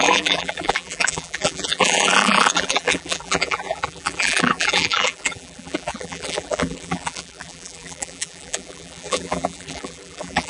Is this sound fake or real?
fake